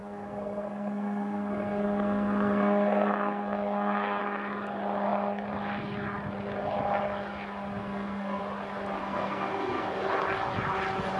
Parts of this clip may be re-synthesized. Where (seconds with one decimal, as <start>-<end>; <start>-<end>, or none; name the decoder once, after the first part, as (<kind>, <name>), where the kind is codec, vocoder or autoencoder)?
0.0-4.2 (codec, SNAC); 7.8-8.4; 9.0-10.0